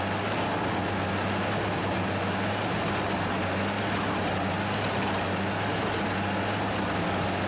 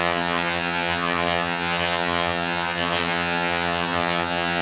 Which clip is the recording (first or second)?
first